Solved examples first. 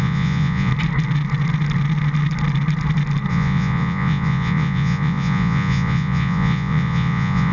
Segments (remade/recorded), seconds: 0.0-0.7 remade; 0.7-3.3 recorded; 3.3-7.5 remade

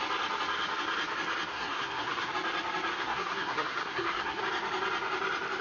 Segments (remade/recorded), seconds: 0.0-1.5 recorded; 1.5-2.3 remade; 2.3-2.9 recorded; 2.9-4.4 remade; 4.4-5.6 recorded

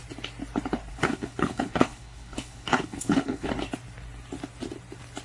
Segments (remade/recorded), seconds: 0.0-0.9 recorded; 0.9-3.5 remade; 3.5-5.2 recorded

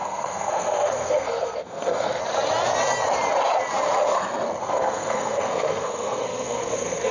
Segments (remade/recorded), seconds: 0.0-2.2 remade; 2.2-4.6 recorded; 4.6-7.1 remade